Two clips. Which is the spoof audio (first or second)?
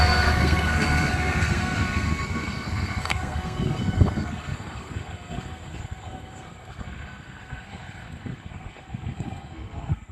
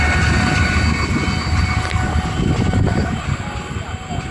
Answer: first